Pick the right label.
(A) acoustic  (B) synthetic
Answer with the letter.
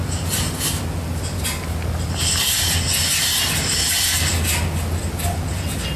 A